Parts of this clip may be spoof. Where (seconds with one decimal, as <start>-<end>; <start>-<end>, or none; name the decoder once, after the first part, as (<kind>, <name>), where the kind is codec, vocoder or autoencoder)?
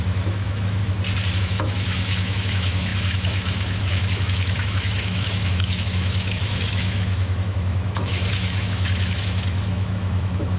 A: 0.0-0.8 (autoencoder, DAC-VAE); 1.4-10.6